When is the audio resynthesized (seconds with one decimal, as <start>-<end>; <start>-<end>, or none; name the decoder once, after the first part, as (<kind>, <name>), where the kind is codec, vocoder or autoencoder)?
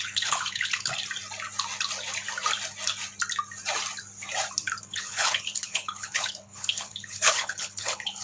0.0-0.9 (codec, HILCodec); 4.8-8.2